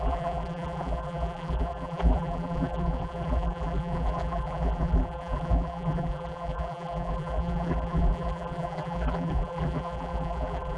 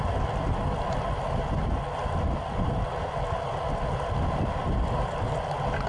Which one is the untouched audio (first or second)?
second